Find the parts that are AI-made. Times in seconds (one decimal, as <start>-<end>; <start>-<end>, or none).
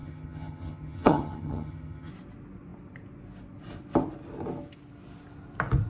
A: 0.0-2.1